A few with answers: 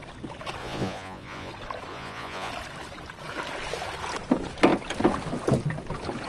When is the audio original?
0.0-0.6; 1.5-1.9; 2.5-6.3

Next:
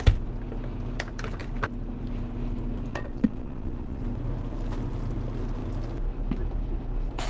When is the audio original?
0.0-2.9; 4.0-7.3

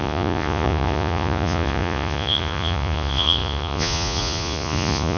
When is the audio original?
none

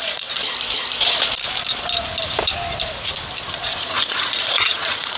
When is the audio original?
0.4-3.5